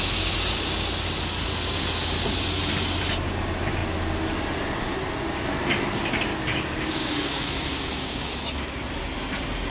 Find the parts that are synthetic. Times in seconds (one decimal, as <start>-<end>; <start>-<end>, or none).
6.3-8.3